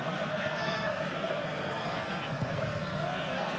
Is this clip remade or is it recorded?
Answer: remade